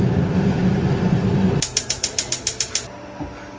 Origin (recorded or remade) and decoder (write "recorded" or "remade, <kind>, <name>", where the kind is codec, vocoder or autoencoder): recorded